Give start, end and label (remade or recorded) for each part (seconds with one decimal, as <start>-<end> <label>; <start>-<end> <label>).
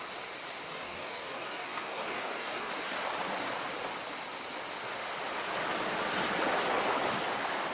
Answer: 0.0-0.7 recorded; 0.7-2.7 remade; 2.7-7.7 recorded